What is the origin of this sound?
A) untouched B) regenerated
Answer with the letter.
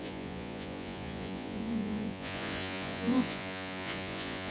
B